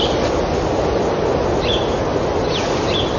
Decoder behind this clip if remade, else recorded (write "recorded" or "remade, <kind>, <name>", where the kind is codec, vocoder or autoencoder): recorded